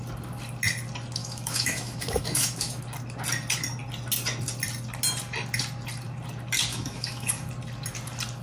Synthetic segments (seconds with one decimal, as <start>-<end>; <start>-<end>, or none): 1.2-2.8; 6.7-7.5